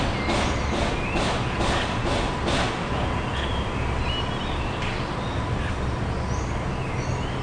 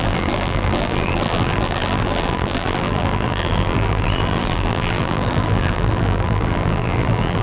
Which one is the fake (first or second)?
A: second